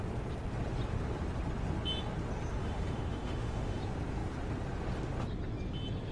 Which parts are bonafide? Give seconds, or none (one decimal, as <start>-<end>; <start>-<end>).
0.0-2.6; 3.8-6.1